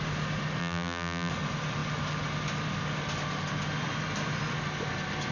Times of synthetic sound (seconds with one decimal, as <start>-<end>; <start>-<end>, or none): 0.6-1.3